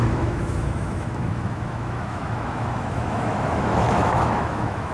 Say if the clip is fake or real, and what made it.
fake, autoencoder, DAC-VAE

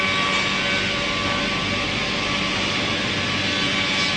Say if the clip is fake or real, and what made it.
real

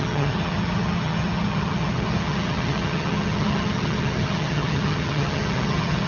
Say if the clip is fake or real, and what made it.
fake, vocoder, HiFi-GAN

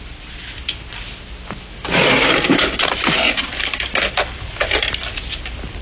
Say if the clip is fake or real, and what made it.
real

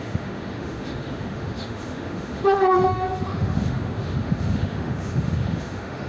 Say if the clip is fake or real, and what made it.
fake, autoencoder, DAC-VAE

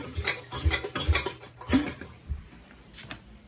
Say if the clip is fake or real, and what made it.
fake, vocoder, BigVGAN v2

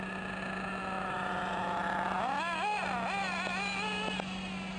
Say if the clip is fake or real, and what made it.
real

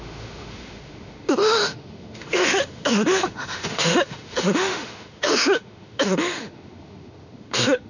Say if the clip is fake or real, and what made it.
fake, autoencoder, DAC-VAE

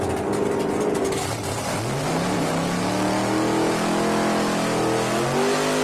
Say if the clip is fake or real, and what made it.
real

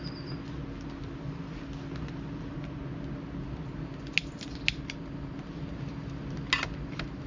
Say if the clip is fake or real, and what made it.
real